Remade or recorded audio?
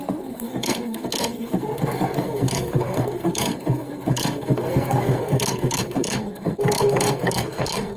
remade